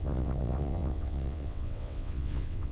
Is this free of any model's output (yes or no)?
no